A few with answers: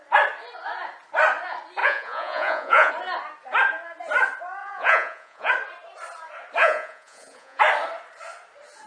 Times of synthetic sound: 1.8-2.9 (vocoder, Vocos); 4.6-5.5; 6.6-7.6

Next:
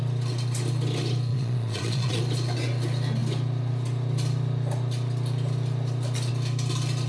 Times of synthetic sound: 1.3-2.2 (vocoder, Vocos)

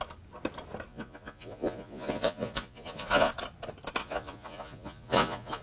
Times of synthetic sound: 0.9-3.3 (vocoder, Vocos); 4.0-5.6

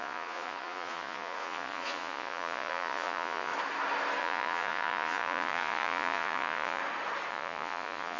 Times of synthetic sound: 0.0-3.5 (vocoder, Vocos); 4.2-6.8; 7.3-8.2

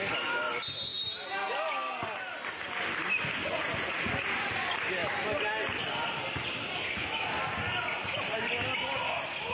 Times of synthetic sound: 3.4-4.5 (vocoder, Vocos)

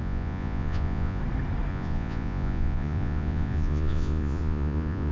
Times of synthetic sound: 0.0-1.2 (vocoder, Vocos); 1.7-5.1

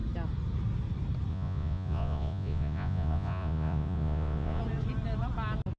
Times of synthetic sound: 1.3-4.6 (vocoder, Vocos)

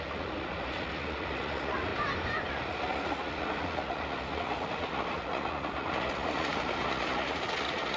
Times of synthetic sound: 0.0-1.9 (vocoder, Vocos); 2.5-8.0